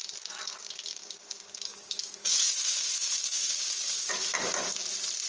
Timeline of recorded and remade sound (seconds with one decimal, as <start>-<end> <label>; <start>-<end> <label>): 0.0-0.9 recorded; 0.9-4.1 remade; 4.1-5.3 recorded